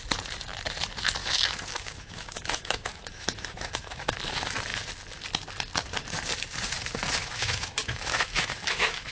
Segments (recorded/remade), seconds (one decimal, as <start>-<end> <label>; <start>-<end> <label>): 0.0-1.2 recorded; 1.2-4.1 remade; 4.1-7.2 recorded; 7.2-9.1 remade